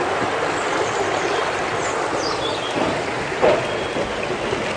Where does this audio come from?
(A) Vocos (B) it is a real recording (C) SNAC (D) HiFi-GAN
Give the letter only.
B